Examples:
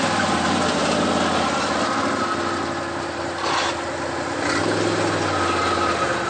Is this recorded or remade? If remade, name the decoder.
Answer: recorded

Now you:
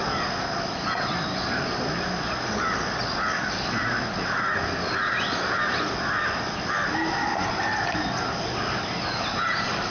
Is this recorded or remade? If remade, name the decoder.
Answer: recorded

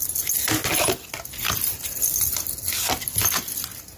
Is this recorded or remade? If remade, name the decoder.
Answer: recorded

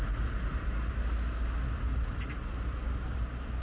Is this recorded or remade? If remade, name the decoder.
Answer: recorded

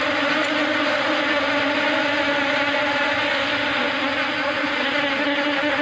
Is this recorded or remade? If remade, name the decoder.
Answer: recorded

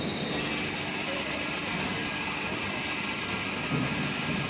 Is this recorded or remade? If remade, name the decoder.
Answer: recorded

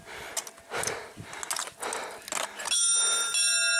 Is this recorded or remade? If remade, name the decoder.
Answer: recorded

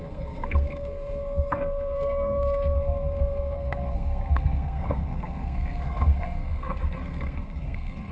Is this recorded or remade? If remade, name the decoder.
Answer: remade, codec, SNAC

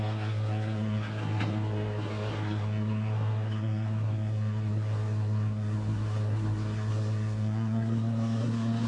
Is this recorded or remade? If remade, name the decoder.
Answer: remade, codec, SNAC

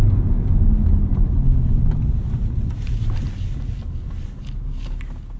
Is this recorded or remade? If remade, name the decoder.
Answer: recorded